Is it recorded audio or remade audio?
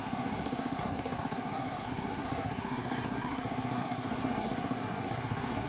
remade